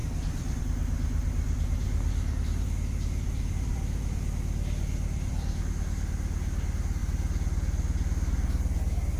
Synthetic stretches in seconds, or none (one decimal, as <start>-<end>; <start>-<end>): 0.0-0.6; 1.2-5.6